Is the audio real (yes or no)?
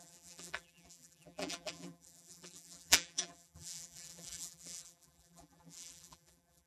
no